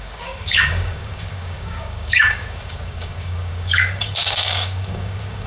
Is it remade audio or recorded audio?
remade